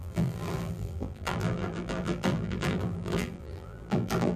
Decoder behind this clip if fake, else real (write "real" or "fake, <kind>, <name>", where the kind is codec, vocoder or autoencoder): fake, vocoder, BigVGAN v2